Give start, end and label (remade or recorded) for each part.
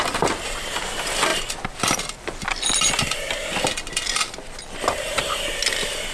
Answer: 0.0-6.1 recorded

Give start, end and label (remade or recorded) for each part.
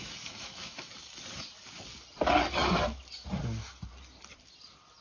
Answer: 0.0-0.9 remade; 0.9-5.0 recorded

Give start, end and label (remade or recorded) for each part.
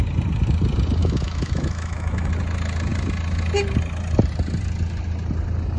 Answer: 0.0-1.0 recorded; 1.0-2.3 remade; 2.3-5.8 recorded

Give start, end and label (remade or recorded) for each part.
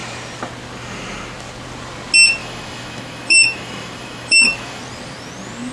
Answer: 0.0-2.4 recorded; 2.4-4.8 remade; 4.8-5.7 recorded